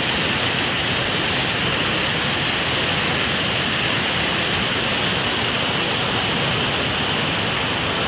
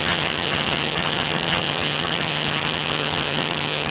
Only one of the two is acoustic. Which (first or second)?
first